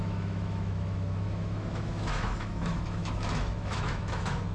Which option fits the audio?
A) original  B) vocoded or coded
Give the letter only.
B